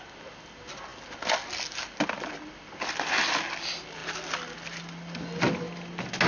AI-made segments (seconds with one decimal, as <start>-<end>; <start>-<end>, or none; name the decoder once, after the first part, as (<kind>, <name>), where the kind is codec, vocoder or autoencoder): none